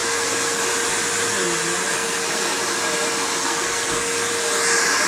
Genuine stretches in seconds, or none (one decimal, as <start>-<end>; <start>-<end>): 0.6-1.9; 2.6-3.4; 4.3-5.1